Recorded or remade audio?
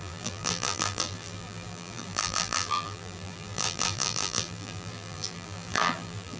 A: remade